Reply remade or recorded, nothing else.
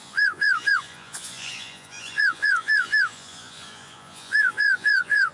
remade